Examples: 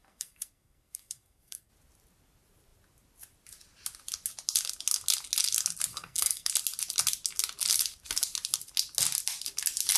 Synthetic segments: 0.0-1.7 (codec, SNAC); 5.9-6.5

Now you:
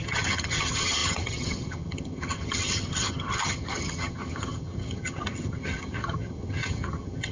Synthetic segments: 0.0-7.3 (vocoder, HiFi-GAN)

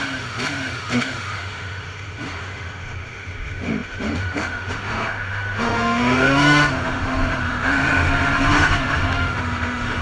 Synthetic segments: 0.0-10.0 (autoencoder, DAC-VAE)

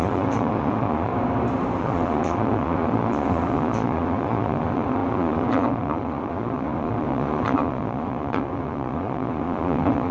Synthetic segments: 0.0-1.1 (vocoder, Vocos); 1.8-10.1

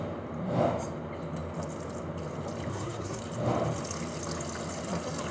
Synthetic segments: 2.7-3.2 (codec, SNAC)

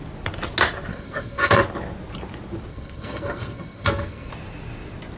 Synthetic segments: 0.9-1.6 (codec, SNAC); 2.7-4.3

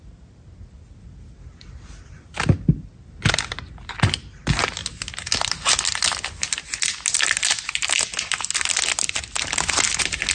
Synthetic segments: none